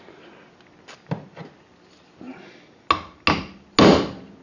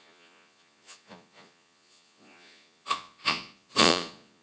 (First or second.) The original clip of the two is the first